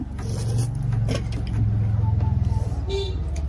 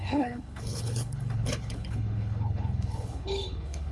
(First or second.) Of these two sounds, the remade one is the second